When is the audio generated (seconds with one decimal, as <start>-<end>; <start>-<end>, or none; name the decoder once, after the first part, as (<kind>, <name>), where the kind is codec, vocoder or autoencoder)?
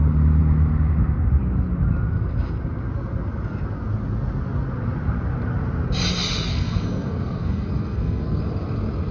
6.5-8.4 (codec, SNAC)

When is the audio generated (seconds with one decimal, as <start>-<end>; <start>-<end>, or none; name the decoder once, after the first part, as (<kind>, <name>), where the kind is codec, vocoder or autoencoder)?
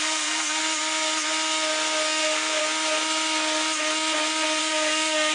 0.0-0.6 (codec, SNAC); 2.2-2.6; 4.6-5.3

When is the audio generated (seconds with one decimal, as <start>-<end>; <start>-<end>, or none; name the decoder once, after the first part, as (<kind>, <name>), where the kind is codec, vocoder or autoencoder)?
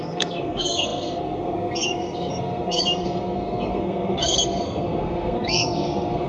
0.0-6.3 (codec, SNAC)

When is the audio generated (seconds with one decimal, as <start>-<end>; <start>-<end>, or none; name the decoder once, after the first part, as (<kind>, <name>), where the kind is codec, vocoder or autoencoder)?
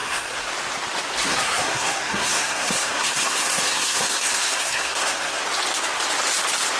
0.0-0.5 (codec, SNAC); 1.3-5.4